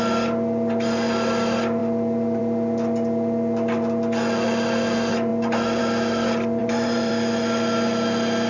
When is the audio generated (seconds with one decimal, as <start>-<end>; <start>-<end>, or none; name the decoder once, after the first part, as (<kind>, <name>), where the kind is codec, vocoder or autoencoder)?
6.6-7.1 (vocoder, BigVGAN v2)